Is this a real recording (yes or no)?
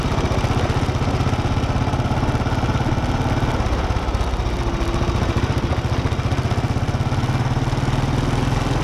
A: yes